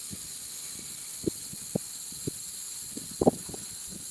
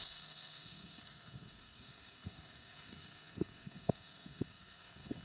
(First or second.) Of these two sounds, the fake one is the second